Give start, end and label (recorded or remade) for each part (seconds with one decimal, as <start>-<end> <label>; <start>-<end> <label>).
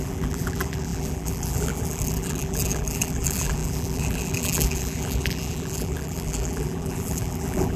0.0-7.8 remade